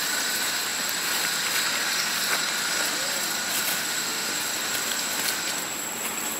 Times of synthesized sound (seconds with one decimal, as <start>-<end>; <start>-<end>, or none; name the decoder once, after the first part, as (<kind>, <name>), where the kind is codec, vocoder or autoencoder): 3.7-4.3 (autoencoder, DAC-VAE)